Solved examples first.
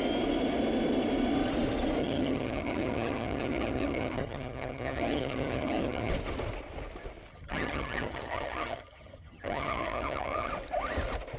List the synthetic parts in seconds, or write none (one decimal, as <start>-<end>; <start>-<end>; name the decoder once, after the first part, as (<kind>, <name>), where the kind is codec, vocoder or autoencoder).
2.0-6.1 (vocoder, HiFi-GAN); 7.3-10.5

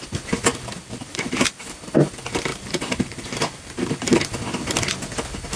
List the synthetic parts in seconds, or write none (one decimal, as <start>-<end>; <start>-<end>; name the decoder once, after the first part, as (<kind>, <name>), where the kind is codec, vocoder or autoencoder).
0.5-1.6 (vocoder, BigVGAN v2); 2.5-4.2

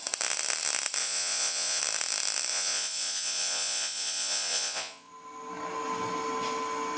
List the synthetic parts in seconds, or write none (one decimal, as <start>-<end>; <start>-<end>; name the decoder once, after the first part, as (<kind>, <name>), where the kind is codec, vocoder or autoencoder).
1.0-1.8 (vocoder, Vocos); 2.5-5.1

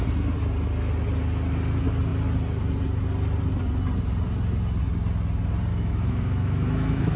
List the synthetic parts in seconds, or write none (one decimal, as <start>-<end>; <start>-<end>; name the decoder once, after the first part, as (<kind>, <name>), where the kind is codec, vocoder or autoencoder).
5.7-7.2 (autoencoder, DAC-VAE)

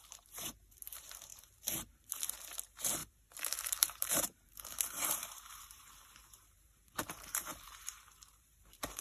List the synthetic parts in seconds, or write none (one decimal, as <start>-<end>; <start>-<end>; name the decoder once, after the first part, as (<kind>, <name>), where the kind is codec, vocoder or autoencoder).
0.0-9.0 (vocoder, BigVGAN v2)

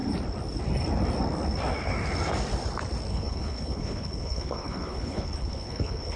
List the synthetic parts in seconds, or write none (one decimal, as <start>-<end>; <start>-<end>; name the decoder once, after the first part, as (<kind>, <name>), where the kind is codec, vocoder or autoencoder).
3.1-6.2 (codec, HILCodec)